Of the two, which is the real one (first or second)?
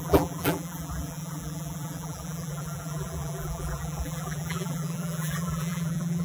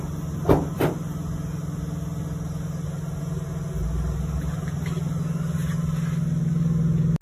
second